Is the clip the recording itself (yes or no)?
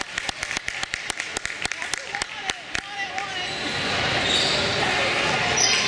yes